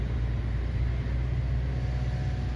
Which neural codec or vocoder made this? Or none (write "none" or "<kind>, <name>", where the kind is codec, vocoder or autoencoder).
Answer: none